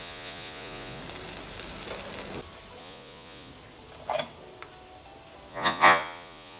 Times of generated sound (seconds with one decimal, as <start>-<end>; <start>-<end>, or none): 0.0-1.0; 2.8-3.5; 5.5-6.6